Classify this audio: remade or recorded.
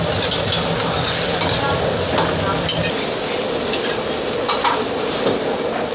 recorded